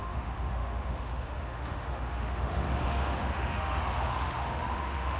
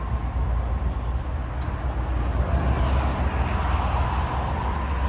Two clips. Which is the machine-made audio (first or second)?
first